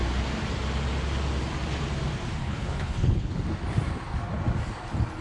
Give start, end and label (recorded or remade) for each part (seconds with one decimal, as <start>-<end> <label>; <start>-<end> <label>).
0.0-2.4 recorded; 2.4-3.3 remade; 3.3-5.2 recorded